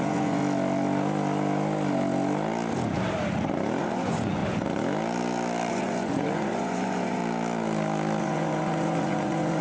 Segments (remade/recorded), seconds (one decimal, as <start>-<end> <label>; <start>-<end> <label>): 0.0-0.4 remade; 0.4-3.8 recorded; 3.8-4.4 remade; 4.4-5.7 recorded; 5.7-7.2 remade; 7.2-8.2 recorded; 8.2-9.6 remade